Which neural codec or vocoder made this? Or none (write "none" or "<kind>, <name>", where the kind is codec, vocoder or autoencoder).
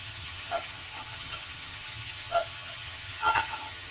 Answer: vocoder, HiFi-GAN